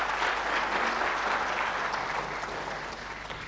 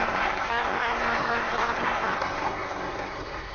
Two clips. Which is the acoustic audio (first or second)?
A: first